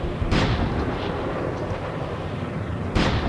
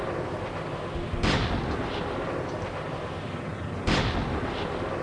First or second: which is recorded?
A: second